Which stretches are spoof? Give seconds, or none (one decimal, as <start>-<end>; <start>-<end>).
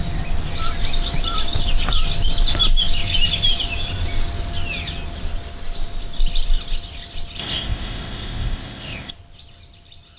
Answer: 7.4-9.1